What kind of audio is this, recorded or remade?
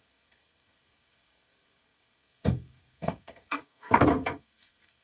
remade